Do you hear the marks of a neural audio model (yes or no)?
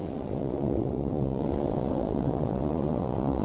yes